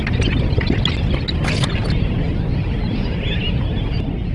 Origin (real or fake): real